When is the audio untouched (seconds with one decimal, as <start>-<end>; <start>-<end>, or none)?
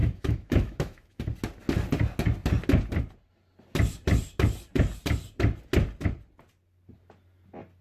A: 1.2-7.8